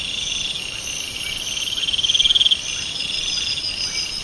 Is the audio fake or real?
real